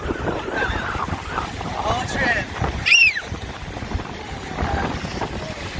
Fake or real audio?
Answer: fake